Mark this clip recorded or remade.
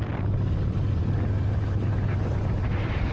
recorded